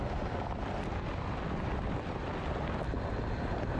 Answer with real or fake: real